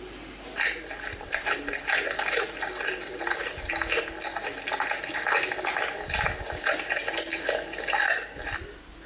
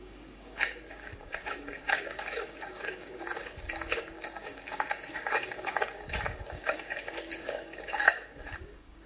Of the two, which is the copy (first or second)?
second